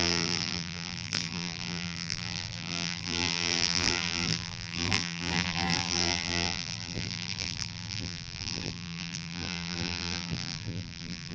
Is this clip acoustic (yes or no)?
no